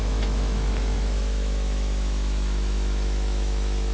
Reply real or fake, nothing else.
fake